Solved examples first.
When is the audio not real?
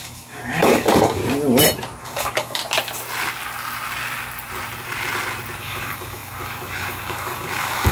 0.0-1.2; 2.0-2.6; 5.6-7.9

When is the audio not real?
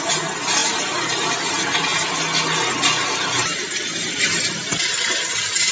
none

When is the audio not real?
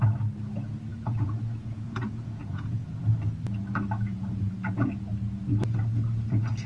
0.9-3.0; 4.1-4.9